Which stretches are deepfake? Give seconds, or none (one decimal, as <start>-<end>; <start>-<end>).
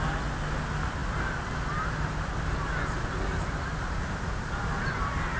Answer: none